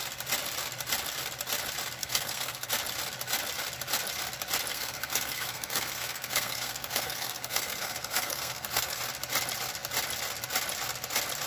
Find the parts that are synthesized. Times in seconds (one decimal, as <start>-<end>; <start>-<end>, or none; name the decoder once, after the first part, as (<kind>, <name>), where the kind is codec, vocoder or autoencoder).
2.0-2.7 (codec, SNAC); 4.7-9.0